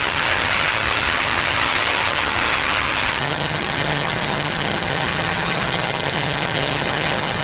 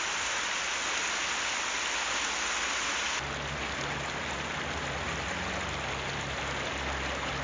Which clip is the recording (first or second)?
second